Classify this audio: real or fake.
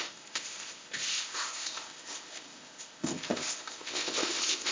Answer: fake